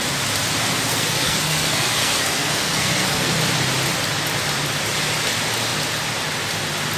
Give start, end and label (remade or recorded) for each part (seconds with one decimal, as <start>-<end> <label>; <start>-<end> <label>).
0.0-0.9 recorded; 0.9-3.4 remade; 3.4-7.0 recorded